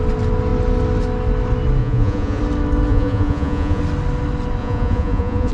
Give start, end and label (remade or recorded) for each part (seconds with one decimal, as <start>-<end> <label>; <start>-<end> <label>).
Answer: 0.0-1.8 recorded; 1.8-2.4 remade; 2.4-2.9 recorded; 2.9-3.8 remade; 3.8-4.6 recorded; 4.6-5.5 remade